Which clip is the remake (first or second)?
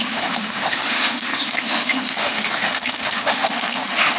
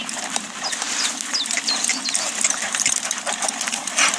first